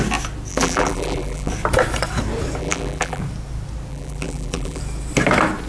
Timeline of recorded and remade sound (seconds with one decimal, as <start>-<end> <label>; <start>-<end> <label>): 0.0-0.5 recorded; 0.5-1.5 remade; 1.5-2.6 recorded; 2.6-3.2 remade; 3.2-3.9 recorded; 3.9-4.8 remade; 4.8-5.7 recorded

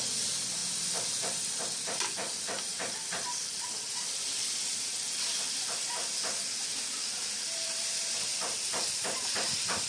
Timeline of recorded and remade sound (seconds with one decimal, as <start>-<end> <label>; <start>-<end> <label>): 0.0-2.7 recorded; 2.7-4.0 remade; 4.0-6.9 recorded; 6.9-9.2 remade; 9.2-9.9 recorded

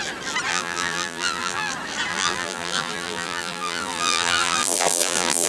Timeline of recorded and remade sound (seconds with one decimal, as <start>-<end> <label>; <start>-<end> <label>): 0.0-0.5 recorded; 0.5-1.7 remade; 1.7-2.1 recorded; 2.1-5.5 remade

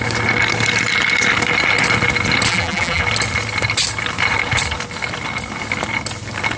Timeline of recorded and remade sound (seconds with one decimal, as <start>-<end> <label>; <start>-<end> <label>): 0.0-2.5 recorded; 2.5-3.0 remade; 3.0-6.6 recorded

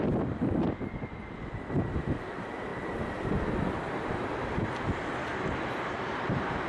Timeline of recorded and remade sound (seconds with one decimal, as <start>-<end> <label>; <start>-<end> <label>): 0.0-5.3 recorded; 5.3-6.7 remade

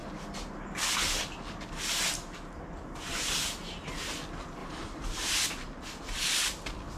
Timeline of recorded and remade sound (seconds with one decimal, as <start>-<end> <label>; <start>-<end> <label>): 0.0-4.6 recorded; 4.6-5.3 remade; 5.3-7.0 recorded

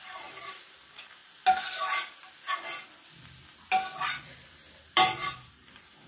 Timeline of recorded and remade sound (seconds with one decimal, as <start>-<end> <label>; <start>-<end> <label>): 0.0-1.2 remade; 1.2-4.9 recorded; 4.9-6.1 remade